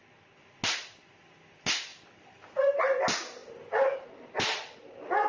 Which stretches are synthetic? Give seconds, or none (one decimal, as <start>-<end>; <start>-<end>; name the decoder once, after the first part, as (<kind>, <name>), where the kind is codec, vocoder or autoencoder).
none